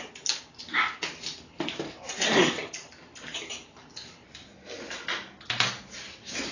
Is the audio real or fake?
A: real